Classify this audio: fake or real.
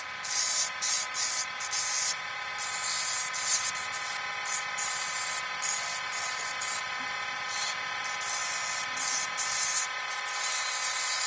real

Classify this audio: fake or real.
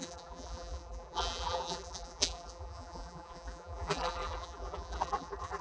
fake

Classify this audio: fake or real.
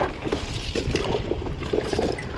fake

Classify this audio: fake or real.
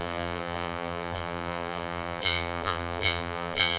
fake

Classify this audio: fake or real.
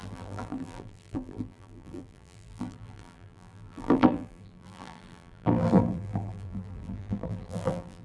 fake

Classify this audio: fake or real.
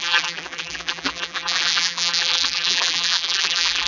fake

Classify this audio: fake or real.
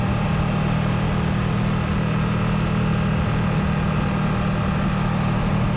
real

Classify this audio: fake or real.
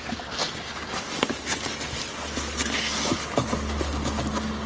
real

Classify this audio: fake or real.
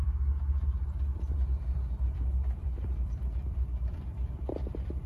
fake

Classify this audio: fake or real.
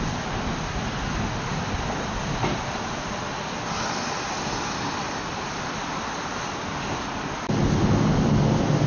real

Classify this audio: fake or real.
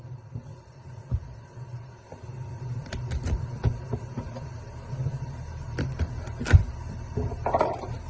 real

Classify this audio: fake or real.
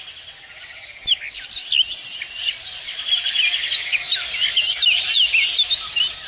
real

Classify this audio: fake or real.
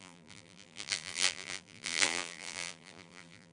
fake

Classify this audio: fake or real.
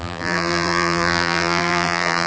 fake